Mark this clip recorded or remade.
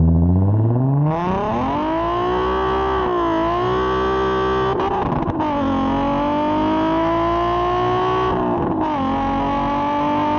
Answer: recorded